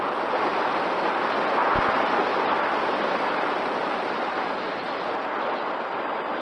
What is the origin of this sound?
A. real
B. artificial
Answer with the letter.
A